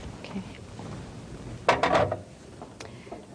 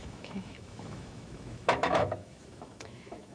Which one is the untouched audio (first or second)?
first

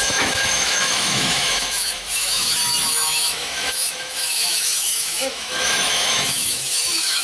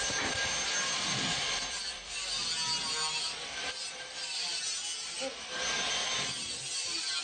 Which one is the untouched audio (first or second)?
second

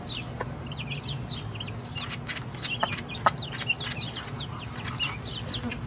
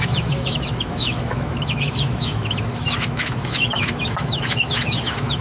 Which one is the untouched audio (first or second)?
first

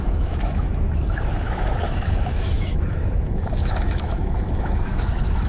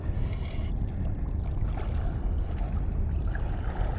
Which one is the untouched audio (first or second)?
second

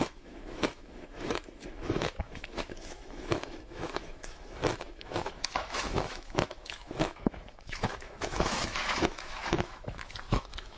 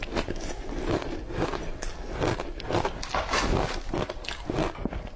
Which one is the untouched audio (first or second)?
second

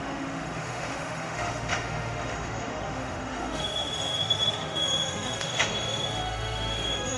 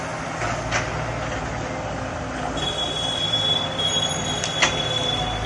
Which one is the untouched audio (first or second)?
second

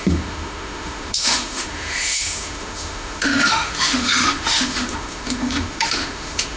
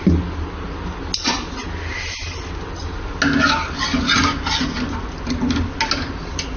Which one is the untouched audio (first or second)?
second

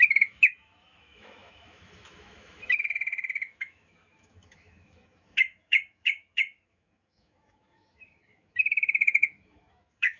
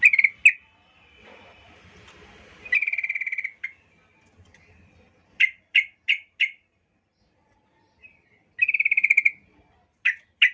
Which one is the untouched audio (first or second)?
second